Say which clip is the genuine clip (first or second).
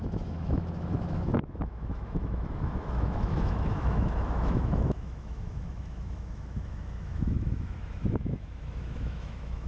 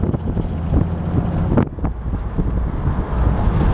second